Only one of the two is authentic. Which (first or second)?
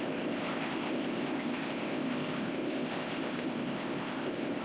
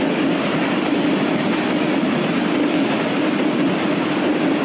second